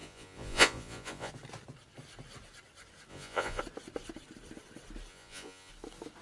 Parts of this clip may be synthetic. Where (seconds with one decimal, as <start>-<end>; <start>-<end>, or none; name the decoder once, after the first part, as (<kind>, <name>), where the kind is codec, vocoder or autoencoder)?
0.0-1.3 (vocoder, Vocos); 3.1-3.6; 5.1-5.7